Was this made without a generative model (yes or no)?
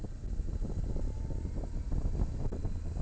yes